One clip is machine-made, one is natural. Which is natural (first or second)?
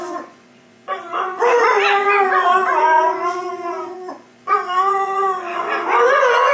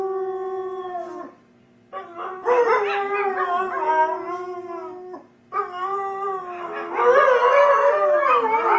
second